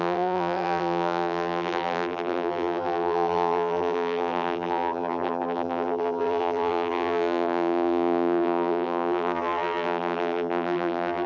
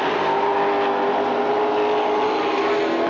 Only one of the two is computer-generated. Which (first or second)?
first